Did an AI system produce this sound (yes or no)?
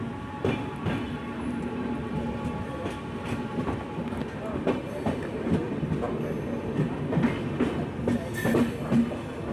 no